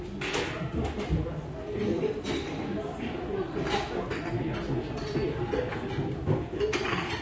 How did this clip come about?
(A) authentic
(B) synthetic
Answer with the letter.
A